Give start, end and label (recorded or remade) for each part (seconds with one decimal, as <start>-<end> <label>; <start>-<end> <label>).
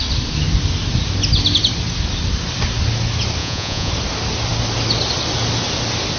0.0-3.4 recorded; 3.4-3.9 remade; 3.9-6.2 recorded